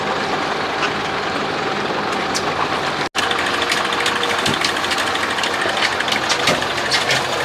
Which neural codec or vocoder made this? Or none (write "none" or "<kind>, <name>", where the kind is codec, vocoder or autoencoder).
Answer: none